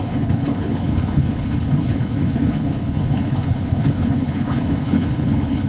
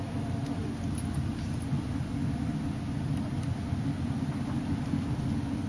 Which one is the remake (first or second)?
first